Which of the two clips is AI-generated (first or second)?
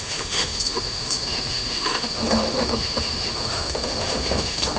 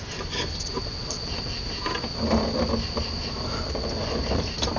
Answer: first